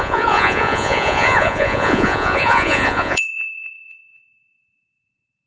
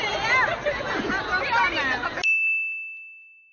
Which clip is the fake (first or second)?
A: first